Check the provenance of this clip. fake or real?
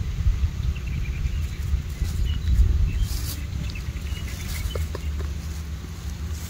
real